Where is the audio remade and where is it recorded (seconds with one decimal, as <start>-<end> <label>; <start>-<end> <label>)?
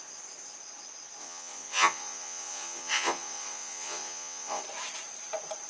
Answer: 0.0-1.2 recorded; 1.2-4.6 remade; 4.6-5.7 recorded